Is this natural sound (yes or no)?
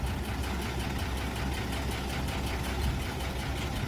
yes